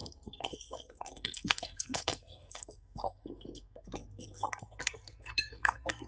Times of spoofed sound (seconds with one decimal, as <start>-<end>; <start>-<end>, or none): 0.0-6.1